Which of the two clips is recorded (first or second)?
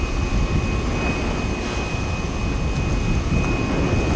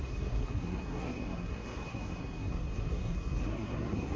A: first